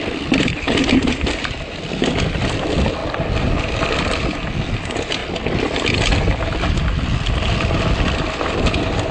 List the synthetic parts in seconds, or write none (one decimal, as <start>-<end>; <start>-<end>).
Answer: 0.0-5.2; 7.9-9.1